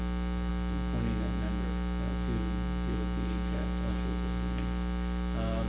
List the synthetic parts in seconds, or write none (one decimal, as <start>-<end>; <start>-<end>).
none